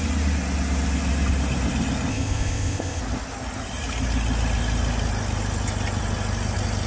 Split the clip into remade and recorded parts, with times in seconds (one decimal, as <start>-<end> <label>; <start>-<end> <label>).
0.0-2.1 recorded; 2.1-3.0 remade; 3.0-6.9 recorded